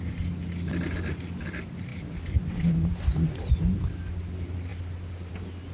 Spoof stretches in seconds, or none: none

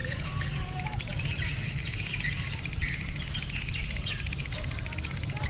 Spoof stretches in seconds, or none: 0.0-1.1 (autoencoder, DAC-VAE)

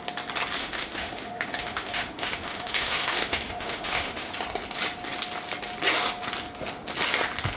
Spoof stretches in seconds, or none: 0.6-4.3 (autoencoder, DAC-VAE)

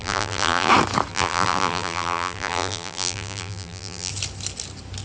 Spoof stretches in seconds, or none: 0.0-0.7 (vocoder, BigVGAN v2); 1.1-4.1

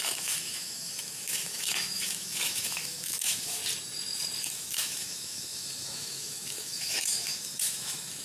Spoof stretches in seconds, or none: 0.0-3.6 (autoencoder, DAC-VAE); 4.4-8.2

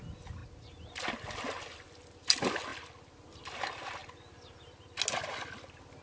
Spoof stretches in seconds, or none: none

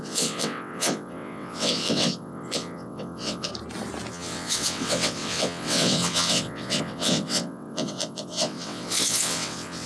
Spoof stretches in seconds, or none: 0.0-3.5 (vocoder, WaveNeXt); 4.1-9.9

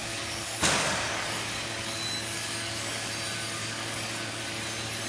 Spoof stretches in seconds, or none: 0.0-3.1 (codec, DAC); 3.6-4.4